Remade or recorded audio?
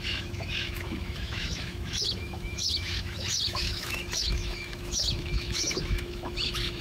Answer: remade